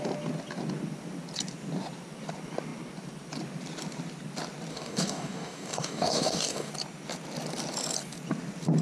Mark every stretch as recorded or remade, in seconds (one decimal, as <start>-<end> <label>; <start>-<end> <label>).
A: 0.0-4.7 recorded; 4.7-6.7 remade; 6.7-8.8 recorded